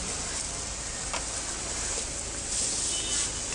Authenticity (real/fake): real